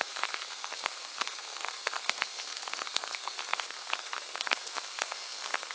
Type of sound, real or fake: fake